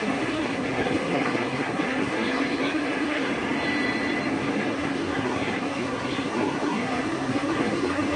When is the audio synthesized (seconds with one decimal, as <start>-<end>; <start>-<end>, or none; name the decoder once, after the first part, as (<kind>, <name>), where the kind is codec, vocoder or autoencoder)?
0.0-3.3 (codec, SNAC); 4.3-8.2

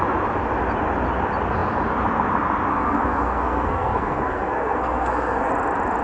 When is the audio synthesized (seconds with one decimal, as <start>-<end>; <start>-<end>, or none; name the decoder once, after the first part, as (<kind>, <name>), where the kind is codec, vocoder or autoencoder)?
2.7-5.5 (codec, SNAC)

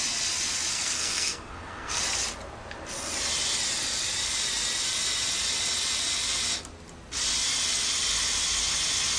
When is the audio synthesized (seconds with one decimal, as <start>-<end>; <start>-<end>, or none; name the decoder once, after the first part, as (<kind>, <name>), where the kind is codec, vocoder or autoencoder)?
0.7-2.0 (codec, SNAC)

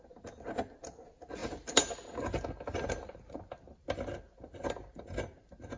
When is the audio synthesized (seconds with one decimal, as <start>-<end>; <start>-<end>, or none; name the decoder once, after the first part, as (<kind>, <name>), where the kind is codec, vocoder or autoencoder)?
none

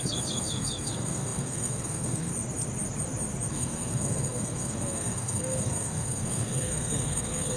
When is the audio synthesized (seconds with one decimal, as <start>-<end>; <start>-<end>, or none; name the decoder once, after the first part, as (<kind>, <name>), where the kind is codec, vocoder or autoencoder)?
0.0-2.3 (codec, SNAC); 3.5-7.6

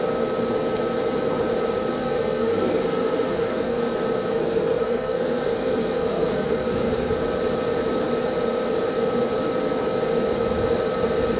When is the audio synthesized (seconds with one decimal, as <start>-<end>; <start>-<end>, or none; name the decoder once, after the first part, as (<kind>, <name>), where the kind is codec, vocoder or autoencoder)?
2.0-3.8 (codec, SNAC); 4.3-7.1

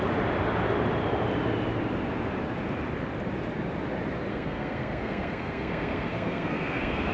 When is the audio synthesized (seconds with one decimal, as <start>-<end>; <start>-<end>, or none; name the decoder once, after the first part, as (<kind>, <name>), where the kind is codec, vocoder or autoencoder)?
4.3-7.1 (codec, SNAC)

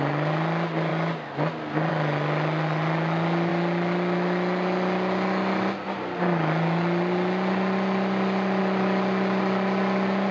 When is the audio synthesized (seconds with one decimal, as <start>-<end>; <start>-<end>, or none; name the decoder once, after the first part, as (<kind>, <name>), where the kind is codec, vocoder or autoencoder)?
none